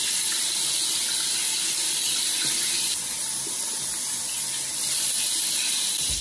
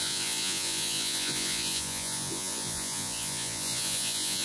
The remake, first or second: second